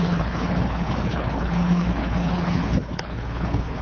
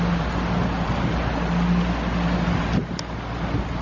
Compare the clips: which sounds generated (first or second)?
first